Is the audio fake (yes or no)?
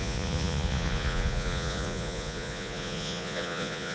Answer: yes